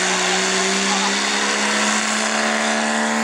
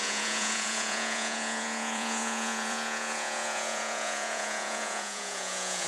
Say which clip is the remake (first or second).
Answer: second